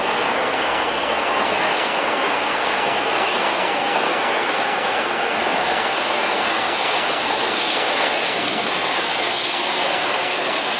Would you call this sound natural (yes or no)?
no